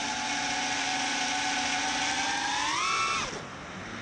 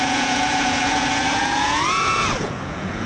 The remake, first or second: second